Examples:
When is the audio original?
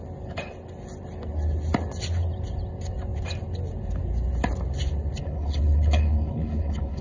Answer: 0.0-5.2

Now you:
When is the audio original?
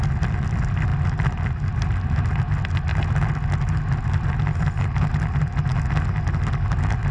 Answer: 0.0-7.1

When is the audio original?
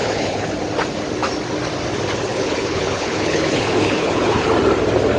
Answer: 0.5-2.3; 4.5-5.2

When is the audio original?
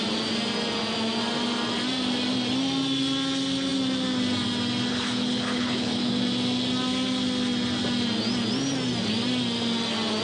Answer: 0.0-4.9; 6.1-10.2